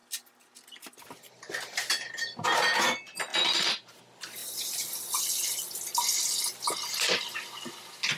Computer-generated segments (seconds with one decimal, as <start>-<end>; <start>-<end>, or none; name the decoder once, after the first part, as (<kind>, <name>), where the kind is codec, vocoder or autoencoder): 3.3-4.0 (vocoder, BigVGAN v2); 4.4-4.9

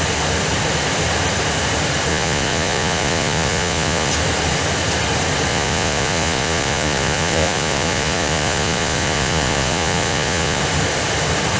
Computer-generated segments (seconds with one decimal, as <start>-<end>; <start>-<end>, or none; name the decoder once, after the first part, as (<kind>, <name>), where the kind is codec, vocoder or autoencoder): 2.1-4.1 (vocoder, Vocos); 5.5-10.6

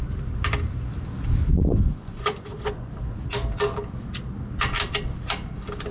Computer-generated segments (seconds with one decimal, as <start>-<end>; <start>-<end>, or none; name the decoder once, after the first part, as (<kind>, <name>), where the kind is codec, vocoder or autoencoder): 1.5-2.9 (vocoder, Vocos)

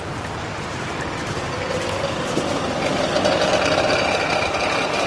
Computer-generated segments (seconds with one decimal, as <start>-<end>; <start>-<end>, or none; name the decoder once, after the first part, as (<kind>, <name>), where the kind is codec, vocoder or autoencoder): none